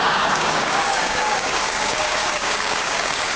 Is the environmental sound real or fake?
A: fake